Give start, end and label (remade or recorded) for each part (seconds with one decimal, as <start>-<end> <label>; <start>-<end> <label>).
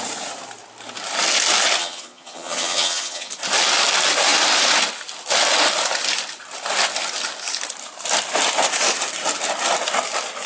0.0-1.8 recorded; 1.8-3.3 remade; 3.3-10.5 recorded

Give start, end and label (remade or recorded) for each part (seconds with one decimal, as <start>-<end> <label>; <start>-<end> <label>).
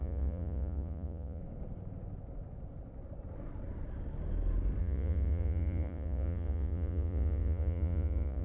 0.0-1.4 remade; 1.4-4.8 recorded; 4.8-8.4 remade